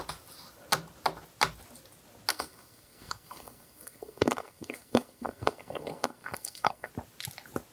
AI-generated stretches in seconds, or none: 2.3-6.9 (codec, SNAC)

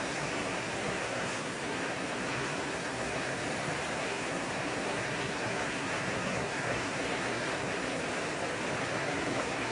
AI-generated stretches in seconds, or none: 0.0-3.4 (codec, SNAC); 3.9-8.0; 8.8-9.7

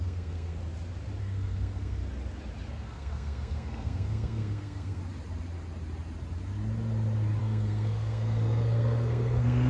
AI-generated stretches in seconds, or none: 0.0-0.6 (codec, SNAC); 1.2-2.0; 2.7-5.0; 7.4-9.7